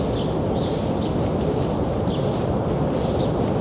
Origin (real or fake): real